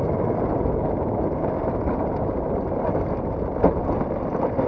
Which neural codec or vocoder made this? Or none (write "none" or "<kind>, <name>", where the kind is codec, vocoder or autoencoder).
none